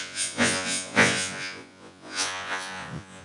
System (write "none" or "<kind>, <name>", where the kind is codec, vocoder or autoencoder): vocoder, Vocos